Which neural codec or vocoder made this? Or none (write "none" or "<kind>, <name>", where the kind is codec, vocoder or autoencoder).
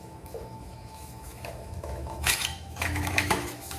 autoencoder, DAC-VAE